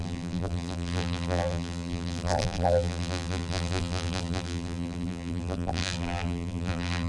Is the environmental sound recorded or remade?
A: remade